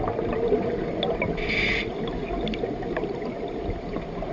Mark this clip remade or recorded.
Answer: recorded